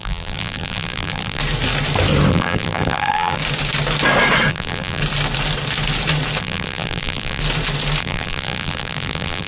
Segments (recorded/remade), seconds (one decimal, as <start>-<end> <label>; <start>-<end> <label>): 0.0-1.4 remade; 1.4-2.3 recorded; 2.3-3.4 remade; 3.4-4.5 recorded; 4.5-5.0 remade; 5.0-6.4 recorded; 6.4-7.4 remade; 7.4-8.0 recorded; 8.0-9.5 remade